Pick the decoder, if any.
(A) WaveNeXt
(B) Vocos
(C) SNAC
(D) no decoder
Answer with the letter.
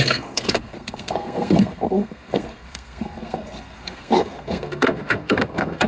C